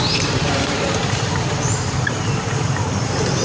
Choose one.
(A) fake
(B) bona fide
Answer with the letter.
A